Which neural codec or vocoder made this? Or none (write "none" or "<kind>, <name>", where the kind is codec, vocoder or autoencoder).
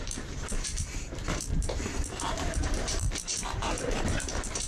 vocoder, BigVGAN v2